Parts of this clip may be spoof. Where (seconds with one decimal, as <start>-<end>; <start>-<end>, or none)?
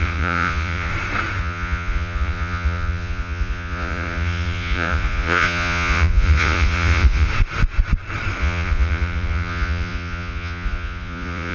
0.0-0.9; 1.4-7.3; 8.4-11.5